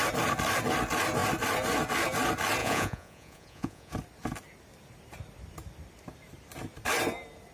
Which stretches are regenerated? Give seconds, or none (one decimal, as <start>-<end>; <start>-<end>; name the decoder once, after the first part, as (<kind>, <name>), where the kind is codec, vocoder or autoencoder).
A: 2.6-3.9 (vocoder, Vocos)